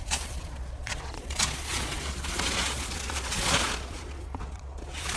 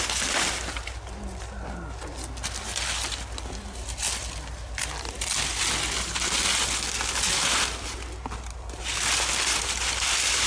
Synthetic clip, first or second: first